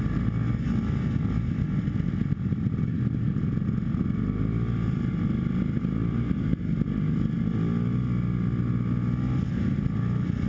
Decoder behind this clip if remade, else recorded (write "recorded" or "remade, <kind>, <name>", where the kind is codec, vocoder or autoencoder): recorded